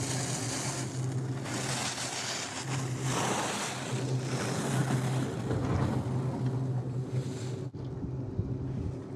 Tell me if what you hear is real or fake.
real